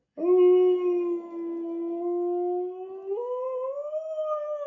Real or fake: real